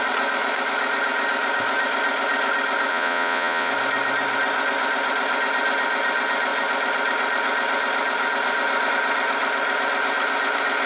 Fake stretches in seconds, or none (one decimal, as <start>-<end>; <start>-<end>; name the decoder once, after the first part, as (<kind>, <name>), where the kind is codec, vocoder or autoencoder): 2.9-3.7 (vocoder, Vocos)